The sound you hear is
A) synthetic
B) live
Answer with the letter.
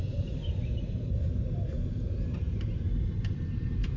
A